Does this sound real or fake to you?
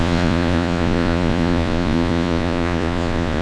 fake